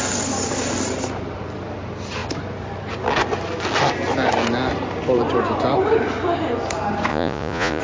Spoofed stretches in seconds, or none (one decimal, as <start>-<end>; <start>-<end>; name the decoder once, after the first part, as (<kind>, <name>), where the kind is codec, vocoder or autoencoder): 7.1-7.8 (vocoder, Vocos)

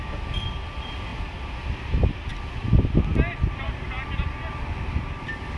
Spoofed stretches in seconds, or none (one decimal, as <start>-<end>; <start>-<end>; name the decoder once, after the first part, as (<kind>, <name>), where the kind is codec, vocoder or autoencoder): 1.1-1.6 (vocoder, BigVGAN v2)

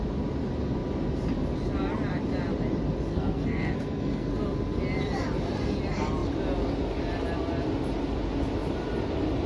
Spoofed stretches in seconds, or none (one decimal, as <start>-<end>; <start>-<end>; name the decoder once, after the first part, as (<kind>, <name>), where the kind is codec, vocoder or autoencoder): 3.1-4.3 (codec, SNAC)

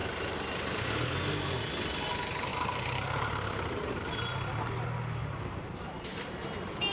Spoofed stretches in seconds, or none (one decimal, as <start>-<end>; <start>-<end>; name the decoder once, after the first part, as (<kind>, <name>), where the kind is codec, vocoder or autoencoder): 0.0-0.8 (vocoder, BigVGAN v2); 2.5-4.1; 5.2-6.4

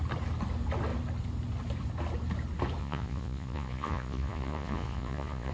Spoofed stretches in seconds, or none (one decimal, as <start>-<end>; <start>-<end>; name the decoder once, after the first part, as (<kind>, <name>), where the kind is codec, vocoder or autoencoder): 2.8-5.5 (vocoder, Vocos)

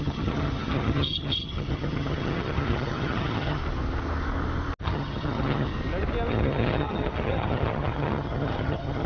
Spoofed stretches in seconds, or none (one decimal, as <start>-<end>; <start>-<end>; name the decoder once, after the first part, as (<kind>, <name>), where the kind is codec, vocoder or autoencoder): 0.0-3.6 (vocoder, HiFi-GAN); 4.8-5.7; 6.3-9.1